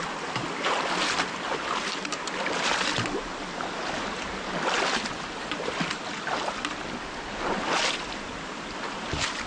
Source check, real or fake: real